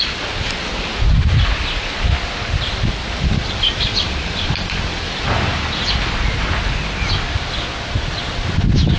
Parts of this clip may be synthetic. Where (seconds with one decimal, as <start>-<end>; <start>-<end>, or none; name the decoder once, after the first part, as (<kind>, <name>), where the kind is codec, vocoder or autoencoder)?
0.9-1.8 (vocoder, BigVGAN v2); 3.9-4.8